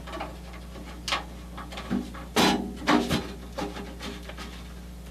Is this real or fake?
real